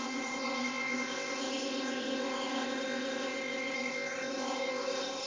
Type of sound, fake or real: fake